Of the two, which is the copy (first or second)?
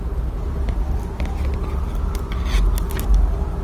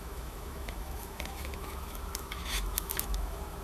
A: second